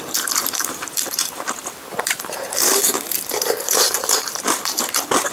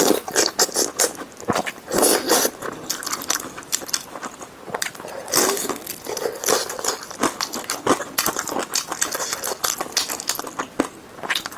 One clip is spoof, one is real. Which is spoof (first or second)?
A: first